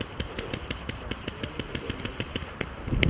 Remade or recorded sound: remade